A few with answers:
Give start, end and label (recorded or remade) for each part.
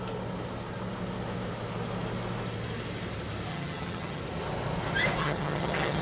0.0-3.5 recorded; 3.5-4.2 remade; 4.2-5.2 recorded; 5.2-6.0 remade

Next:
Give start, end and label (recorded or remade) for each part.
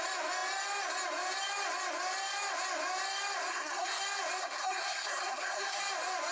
0.0-3.5 recorded; 3.5-4.0 remade; 4.0-4.4 recorded; 4.4-5.8 remade; 5.8-6.3 recorded